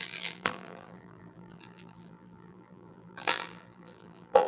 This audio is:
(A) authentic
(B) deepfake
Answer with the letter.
B